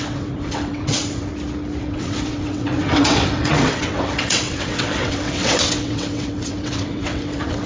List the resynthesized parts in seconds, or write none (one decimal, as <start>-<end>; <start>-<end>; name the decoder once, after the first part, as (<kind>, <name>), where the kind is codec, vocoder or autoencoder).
0.0-1.3 (vocoder, WaveNeXt); 1.8-7.7